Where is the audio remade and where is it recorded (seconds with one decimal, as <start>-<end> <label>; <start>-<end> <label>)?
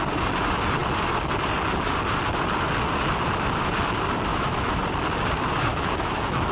0.0-4.3 recorded; 4.3-4.8 remade; 4.8-5.7 recorded; 5.7-6.5 remade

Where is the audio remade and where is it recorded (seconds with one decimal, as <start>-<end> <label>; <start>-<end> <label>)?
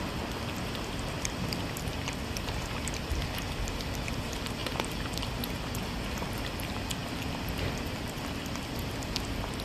0.0-9.6 recorded